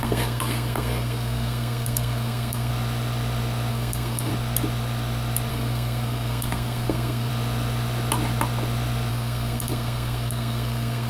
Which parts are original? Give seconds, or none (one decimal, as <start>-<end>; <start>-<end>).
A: 2.7-3.7; 4.3-5.5; 7.3-9.1